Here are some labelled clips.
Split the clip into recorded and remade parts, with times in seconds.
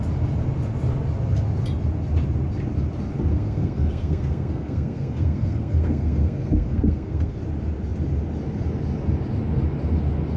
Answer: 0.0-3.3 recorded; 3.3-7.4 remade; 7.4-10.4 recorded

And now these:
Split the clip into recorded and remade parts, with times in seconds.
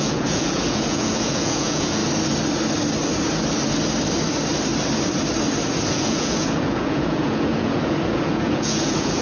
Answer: 0.0-2.0 remade; 2.0-5.9 recorded; 5.9-9.2 remade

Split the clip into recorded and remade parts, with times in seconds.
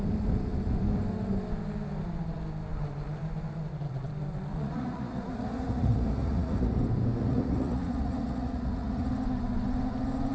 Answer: 0.0-4.5 recorded; 4.5-6.8 remade; 6.8-7.2 recorded; 7.2-9.1 remade; 9.1-10.3 recorded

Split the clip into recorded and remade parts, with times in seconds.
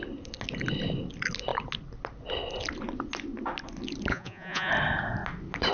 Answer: 0.0-4.1 recorded; 4.1-4.7 remade; 4.7-5.7 recorded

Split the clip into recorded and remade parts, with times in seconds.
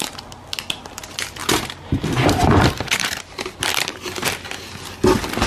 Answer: 0.0-1.4 recorded; 1.4-3.2 remade; 3.2-3.9 recorded; 3.9-4.5 remade; 4.5-5.5 recorded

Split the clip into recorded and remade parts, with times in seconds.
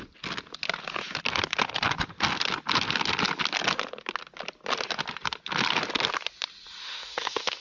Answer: 0.0-6.8 recorded; 6.8-7.6 remade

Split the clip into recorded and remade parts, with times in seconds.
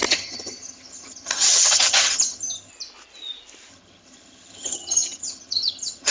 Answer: 0.0-2.7 remade; 2.7-3.7 recorded; 3.7-6.1 remade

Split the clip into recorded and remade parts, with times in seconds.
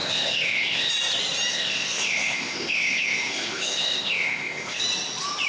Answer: 0.0-0.9 remade; 0.9-1.5 recorded; 1.5-4.8 remade; 4.8-5.5 recorded